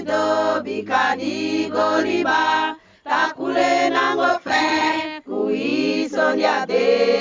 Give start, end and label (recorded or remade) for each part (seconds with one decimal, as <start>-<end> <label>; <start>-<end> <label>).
0.0-4.3 recorded; 4.3-5.0 remade; 5.0-7.2 recorded